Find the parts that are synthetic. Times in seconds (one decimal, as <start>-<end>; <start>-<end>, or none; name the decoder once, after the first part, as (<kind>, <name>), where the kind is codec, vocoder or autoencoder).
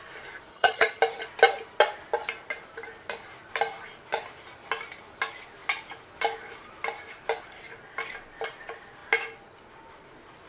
0.5-1.0 (vocoder, HiFi-GAN)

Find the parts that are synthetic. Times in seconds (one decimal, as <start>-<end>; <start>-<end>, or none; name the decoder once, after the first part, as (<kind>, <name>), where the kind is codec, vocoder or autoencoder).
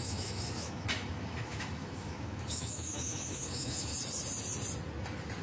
0.0-3.9 (autoencoder, DAC-VAE)